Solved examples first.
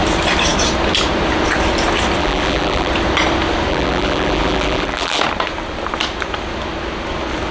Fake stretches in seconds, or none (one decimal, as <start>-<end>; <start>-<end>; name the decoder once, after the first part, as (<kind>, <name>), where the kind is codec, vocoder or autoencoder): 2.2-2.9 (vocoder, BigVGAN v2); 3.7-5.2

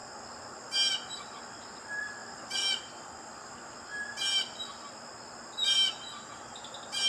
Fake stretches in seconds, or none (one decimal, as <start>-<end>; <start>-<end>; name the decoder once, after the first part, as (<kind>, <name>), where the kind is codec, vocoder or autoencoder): 2.2-2.8 (vocoder, BigVGAN v2)

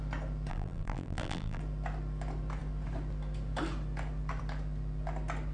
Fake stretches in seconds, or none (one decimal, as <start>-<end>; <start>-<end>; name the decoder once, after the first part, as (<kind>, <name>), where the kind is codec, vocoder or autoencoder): 0.5-1.6 (vocoder, BigVGAN v2)

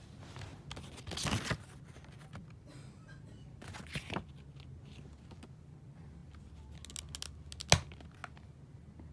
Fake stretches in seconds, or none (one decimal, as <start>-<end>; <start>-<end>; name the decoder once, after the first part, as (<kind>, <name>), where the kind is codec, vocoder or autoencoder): none

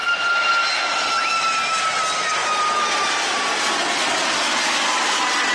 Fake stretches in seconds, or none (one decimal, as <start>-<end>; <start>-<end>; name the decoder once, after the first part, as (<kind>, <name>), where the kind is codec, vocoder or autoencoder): 0.0-0.5 (vocoder, BigVGAN v2)

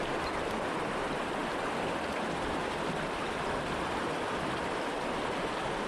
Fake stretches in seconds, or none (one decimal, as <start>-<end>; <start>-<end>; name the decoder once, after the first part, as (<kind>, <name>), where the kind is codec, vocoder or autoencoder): 0.0-5.9 (vocoder, BigVGAN v2)

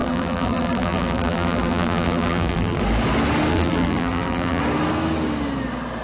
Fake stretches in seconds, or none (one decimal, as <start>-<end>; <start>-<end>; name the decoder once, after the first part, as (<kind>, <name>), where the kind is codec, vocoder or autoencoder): 0.0-2.8 (vocoder, BigVGAN v2); 3.5-4.6